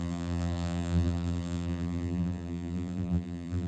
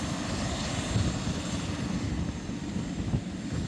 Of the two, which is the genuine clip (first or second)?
second